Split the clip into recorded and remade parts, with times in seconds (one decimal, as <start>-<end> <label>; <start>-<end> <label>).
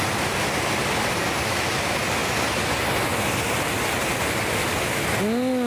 0.0-4.6 recorded; 4.6-5.2 remade; 5.2-5.7 recorded